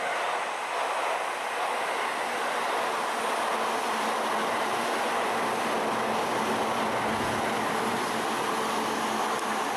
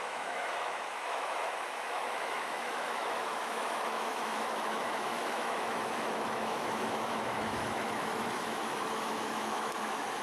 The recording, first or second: first